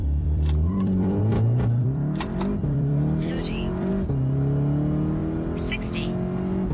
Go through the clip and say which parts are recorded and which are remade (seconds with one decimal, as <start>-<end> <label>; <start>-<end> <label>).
0.0-1.2 remade; 1.2-1.8 recorded; 1.8-3.9 remade; 3.9-6.7 recorded